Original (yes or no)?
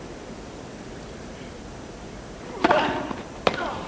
no